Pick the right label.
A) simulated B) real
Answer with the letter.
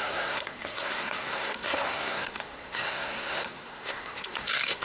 A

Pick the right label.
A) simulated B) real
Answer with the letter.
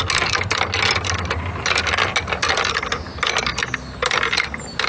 B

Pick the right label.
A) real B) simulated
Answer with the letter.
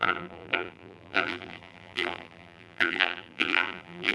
B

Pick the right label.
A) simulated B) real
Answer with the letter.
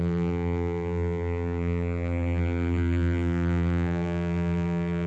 A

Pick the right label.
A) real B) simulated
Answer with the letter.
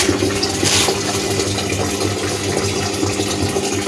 A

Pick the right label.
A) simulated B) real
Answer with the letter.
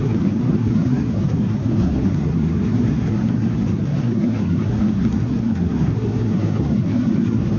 A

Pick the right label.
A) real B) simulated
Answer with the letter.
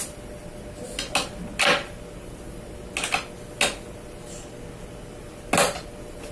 A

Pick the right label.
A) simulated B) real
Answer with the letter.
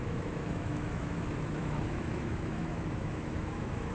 A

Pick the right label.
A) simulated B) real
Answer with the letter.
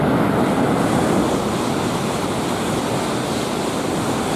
B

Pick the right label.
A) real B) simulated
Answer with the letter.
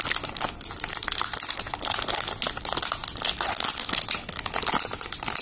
A